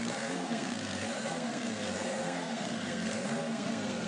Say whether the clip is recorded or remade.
remade